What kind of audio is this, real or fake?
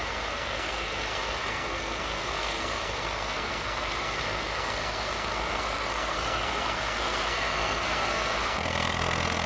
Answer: fake